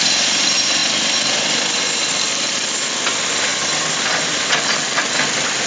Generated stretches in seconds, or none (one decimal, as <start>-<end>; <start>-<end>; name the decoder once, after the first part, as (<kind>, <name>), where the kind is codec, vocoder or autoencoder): 3.5-4.5 (vocoder, BigVGAN v2)